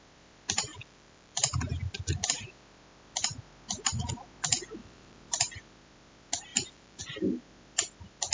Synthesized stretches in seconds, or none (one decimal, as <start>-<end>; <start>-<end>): 0.7-1.7; 4.8-5.5; 6.5-7.0